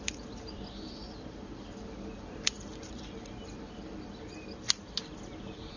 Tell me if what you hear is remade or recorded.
remade